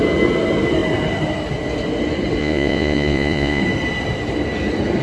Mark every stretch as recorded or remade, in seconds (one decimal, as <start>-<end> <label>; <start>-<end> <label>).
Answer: 0.0-2.4 recorded; 2.4-3.6 remade; 3.6-5.0 recorded